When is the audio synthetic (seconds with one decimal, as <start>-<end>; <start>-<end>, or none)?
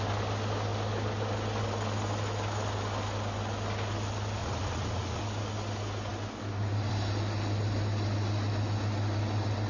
4.4-5.2